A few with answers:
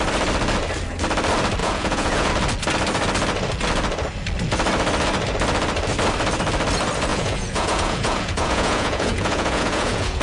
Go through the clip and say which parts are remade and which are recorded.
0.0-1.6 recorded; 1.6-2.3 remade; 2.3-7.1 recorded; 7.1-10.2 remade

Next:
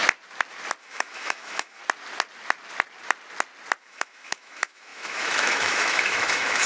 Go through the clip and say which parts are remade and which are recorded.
0.0-0.8 recorded; 0.8-1.8 remade; 1.8-3.8 recorded; 3.8-6.7 remade

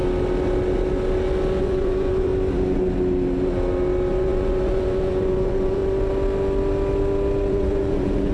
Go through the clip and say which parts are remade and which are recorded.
0.0-1.6 recorded; 1.6-2.3 remade; 2.3-4.1 recorded; 4.1-5.8 remade; 5.8-7.5 recorded; 7.5-8.3 remade

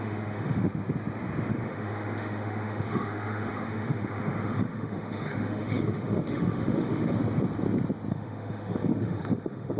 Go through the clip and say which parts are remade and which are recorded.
0.0-0.8 remade; 0.8-1.5 recorded; 1.5-7.2 remade; 7.2-8.1 recorded; 8.1-9.8 remade

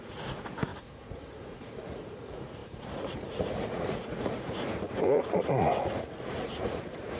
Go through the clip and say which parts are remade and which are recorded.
0.0-7.2 remade

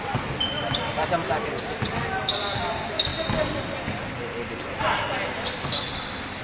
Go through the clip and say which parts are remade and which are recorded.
0.0-6.4 recorded

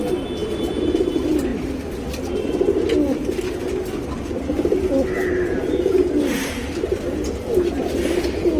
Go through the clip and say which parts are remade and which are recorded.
0.0-8.6 recorded